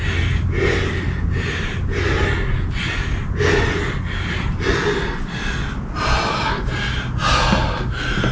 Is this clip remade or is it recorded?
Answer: recorded